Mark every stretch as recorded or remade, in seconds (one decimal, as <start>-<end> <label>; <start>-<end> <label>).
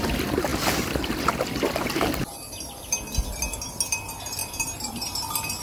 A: 0.0-5.6 recorded